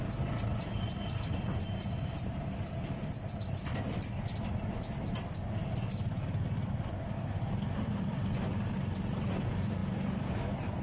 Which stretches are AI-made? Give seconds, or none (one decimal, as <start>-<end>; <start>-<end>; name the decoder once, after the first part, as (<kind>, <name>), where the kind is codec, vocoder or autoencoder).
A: none